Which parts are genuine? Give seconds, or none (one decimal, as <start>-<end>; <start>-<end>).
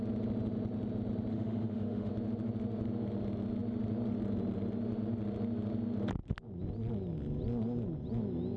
0.0-1.3; 2.1-8.6